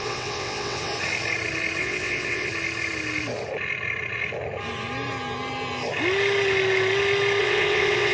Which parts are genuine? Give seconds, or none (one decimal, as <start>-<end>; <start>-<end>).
0.9-1.8; 2.5-7.4